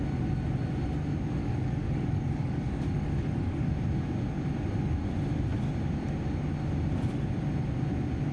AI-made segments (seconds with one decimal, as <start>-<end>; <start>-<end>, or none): 1.4-3.7